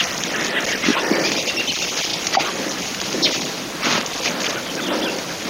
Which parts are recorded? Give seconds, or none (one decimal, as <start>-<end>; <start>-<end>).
0.0-5.5